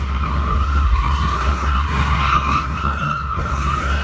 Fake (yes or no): yes